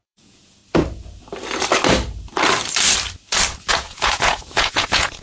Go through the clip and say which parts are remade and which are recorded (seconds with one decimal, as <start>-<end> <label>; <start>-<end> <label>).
0.0-0.6 remade; 0.6-3.7 recorded; 3.7-5.2 remade